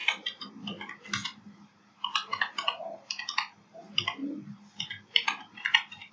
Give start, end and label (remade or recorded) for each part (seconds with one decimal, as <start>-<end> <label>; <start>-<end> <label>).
0.0-0.5 remade; 0.5-6.1 recorded